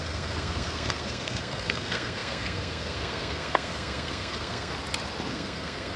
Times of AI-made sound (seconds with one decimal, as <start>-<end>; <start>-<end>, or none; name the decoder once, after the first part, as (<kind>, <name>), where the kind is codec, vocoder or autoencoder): 0.0-4.7 (codec, SNAC); 5.3-6.0